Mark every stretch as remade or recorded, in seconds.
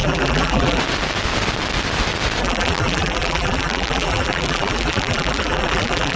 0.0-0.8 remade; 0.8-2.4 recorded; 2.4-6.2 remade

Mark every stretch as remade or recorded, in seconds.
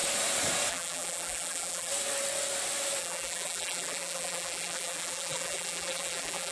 0.0-0.7 recorded; 0.7-1.9 remade; 1.9-3.0 recorded; 3.0-6.5 remade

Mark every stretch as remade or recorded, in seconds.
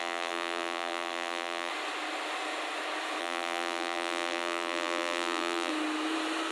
0.0-1.7 remade; 1.7-3.2 recorded; 3.2-5.7 remade; 5.7-6.5 recorded